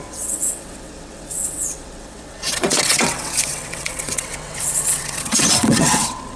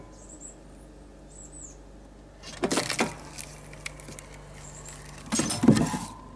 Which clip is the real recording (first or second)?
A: second